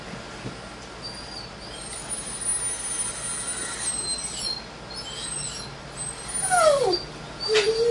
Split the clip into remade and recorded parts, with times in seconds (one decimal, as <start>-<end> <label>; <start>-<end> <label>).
0.0-7.9 recorded